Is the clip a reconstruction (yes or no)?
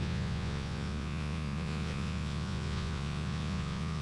yes